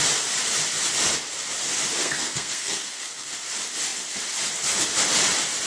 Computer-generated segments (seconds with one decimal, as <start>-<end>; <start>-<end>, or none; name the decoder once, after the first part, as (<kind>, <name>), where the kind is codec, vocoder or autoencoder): 2.0-3.3 (codec, SNAC)